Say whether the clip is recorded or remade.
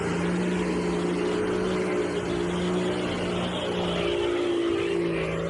recorded